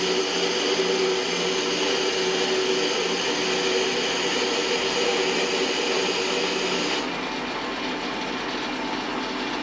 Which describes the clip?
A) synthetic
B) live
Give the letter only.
B